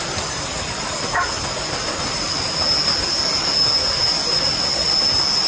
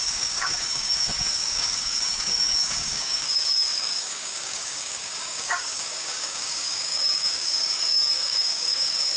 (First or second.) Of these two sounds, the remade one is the second